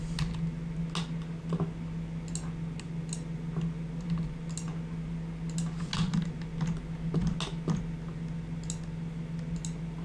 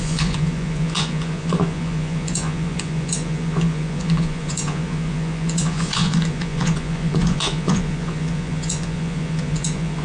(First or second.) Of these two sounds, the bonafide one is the first